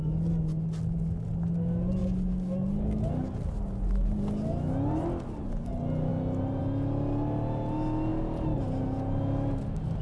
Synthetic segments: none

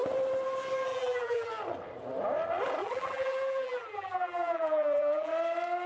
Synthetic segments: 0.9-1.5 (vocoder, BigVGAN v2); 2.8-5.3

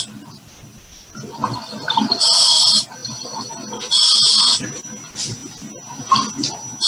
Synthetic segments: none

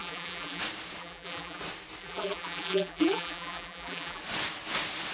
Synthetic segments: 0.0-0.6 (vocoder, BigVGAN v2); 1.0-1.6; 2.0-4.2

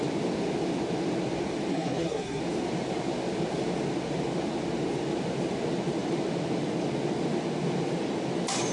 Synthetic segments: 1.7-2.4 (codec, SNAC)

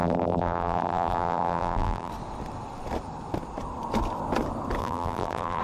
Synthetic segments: 0.0-2.1 (vocoder, BigVGAN v2); 4.8-5.6

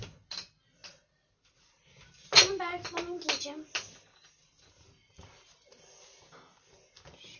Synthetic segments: none